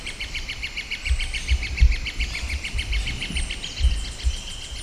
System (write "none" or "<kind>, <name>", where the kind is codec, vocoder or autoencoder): none